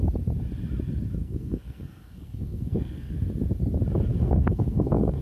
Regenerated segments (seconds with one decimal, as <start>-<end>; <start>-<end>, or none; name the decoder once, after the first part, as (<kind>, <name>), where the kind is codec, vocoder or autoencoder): 1.2-3.1 (codec, SNAC); 4.1-5.2